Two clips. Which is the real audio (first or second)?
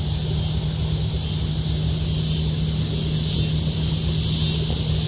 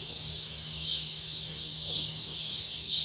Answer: first